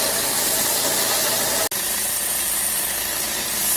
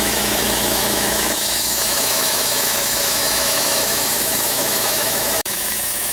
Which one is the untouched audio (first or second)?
first